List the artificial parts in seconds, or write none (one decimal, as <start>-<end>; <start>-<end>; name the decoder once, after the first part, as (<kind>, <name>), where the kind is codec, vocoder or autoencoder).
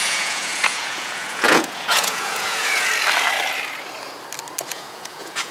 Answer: 0.0-2.9 (vocoder, Vocos); 4.7-5.5